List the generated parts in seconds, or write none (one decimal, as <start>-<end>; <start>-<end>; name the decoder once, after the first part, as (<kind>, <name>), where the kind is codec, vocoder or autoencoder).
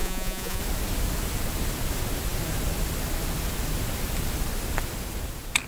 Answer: 0.0-0.6 (vocoder, Vocos)